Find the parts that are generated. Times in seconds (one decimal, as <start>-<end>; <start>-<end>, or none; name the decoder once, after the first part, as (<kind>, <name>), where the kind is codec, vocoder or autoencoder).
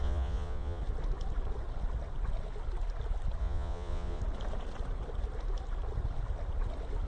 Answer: 0.0-0.8 (vocoder, Vocos); 3.4-4.2